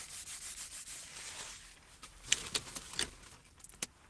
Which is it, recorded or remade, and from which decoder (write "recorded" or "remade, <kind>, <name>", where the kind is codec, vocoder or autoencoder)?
recorded